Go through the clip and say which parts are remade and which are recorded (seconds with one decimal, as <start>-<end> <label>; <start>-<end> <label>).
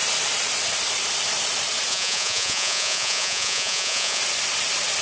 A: 0.0-1.9 recorded; 1.9-4.2 remade; 4.2-5.0 recorded